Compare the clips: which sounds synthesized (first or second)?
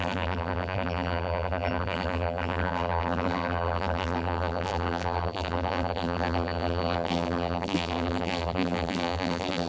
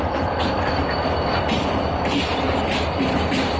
first